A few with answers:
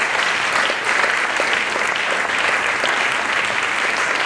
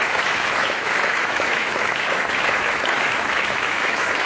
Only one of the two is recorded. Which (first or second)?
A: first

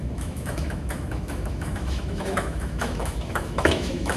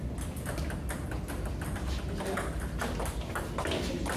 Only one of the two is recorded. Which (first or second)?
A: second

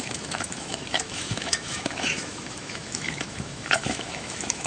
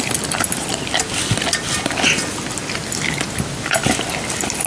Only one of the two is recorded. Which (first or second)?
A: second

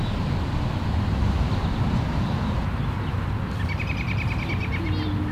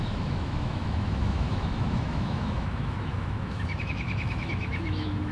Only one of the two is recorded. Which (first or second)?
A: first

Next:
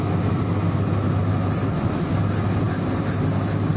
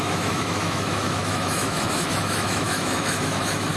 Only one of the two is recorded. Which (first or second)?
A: first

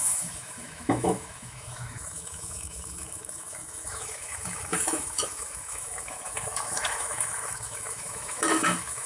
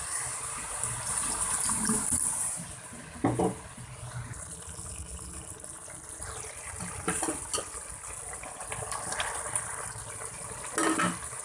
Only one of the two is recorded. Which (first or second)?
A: second